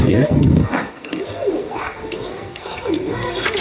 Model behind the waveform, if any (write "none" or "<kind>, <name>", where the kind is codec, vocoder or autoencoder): codec, SNAC